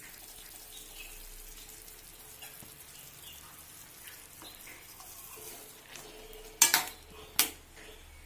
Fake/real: real